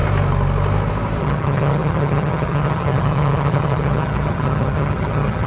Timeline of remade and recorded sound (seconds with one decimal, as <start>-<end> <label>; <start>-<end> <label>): 0.0-1.2 recorded; 1.2-5.5 remade